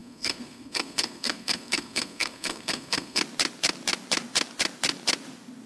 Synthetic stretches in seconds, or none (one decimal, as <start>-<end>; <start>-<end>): 0.0-3.2